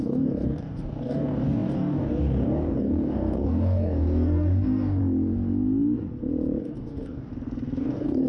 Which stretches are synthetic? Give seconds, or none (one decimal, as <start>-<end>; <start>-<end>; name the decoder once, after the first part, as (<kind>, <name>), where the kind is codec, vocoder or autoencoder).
0.0-5.0 (codec, DAC); 6.6-7.3; 7.8-8.3